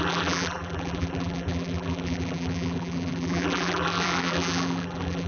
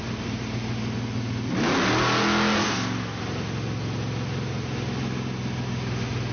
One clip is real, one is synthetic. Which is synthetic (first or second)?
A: first